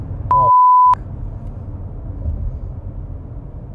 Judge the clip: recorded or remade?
recorded